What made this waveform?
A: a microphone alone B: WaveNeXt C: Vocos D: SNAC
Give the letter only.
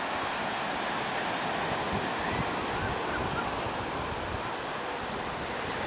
A